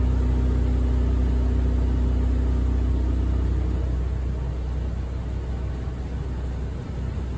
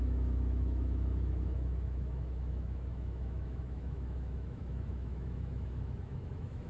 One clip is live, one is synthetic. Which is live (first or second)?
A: first